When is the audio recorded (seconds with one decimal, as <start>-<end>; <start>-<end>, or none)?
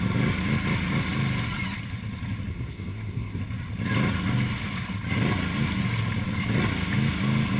0.0-2.5; 3.4-7.6